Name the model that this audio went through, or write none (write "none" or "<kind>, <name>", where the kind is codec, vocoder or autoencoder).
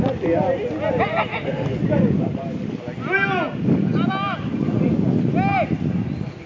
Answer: none